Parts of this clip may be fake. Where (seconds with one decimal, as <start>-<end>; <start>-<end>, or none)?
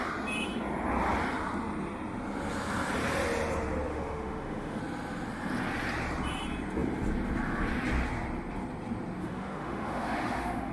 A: 3.9-4.8; 9.2-10.7